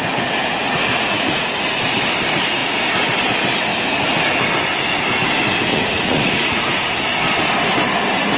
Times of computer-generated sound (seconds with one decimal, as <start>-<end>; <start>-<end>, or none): 0.6-1.8; 5.7-6.6